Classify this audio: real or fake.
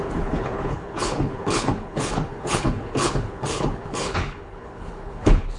fake